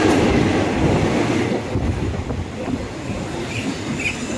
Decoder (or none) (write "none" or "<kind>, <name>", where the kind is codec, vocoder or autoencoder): none